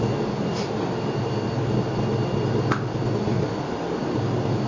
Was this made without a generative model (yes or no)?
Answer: yes